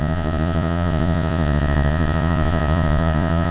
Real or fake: fake